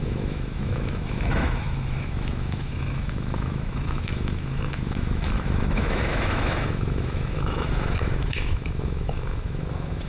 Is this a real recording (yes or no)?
no